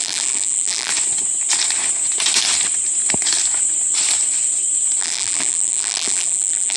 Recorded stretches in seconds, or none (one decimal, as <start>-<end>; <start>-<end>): 0.9-5.0